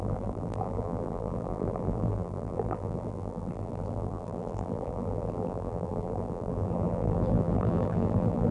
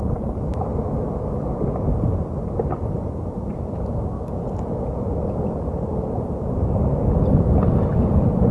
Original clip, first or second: second